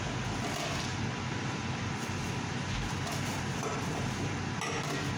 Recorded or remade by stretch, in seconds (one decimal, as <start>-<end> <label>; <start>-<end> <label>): 0.0-5.2 recorded